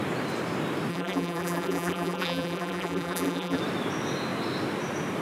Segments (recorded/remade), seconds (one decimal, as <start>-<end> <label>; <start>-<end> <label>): 0.0-0.9 recorded; 0.9-3.6 remade; 3.6-5.2 recorded